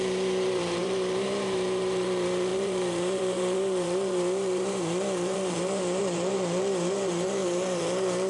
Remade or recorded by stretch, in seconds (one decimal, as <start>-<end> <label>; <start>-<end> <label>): 0.0-8.3 remade